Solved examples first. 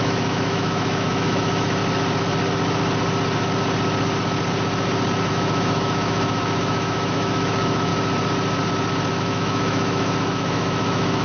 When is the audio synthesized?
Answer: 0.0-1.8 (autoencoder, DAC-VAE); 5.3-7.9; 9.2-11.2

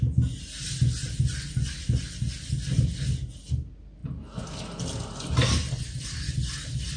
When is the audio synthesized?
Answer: none

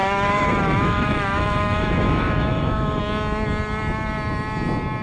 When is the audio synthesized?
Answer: 0.0-3.0 (autoencoder, DAC-VAE)